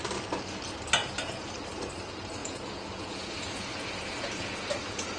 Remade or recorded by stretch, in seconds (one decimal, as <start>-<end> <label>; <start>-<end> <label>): 0.0-1.0 recorded; 1.0-1.5 remade; 1.5-2.4 recorded; 2.4-5.2 remade